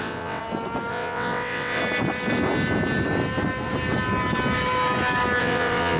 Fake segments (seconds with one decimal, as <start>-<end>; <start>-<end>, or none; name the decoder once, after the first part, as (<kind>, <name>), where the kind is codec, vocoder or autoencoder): 0.0-0.4 (vocoder, WaveNeXt); 0.9-1.8; 5.4-6.0